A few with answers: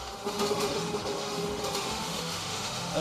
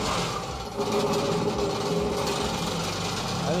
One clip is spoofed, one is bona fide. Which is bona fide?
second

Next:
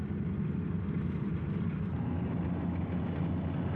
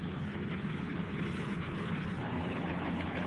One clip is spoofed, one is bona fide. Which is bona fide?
first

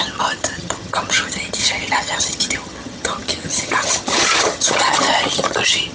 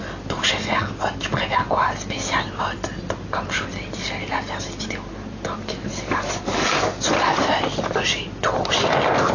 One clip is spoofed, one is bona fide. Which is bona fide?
second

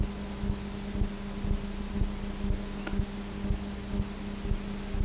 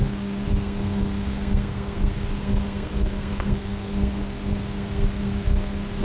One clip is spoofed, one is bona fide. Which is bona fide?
first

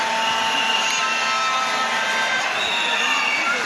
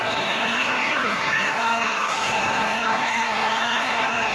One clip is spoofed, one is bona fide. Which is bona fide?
first